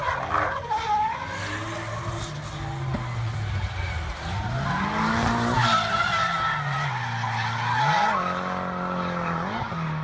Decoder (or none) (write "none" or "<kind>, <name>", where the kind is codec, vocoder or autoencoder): none